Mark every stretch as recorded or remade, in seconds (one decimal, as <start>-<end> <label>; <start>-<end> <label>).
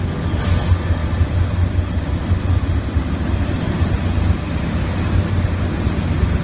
0.0-6.4 recorded